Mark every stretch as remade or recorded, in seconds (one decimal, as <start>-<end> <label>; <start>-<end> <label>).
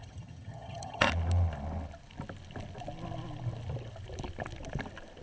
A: 0.0-1.1 remade; 1.1-5.2 recorded